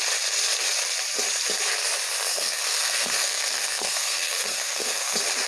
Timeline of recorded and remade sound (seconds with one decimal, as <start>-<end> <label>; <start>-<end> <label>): 0.0-2.3 recorded; 2.3-5.1 remade; 5.1-5.5 recorded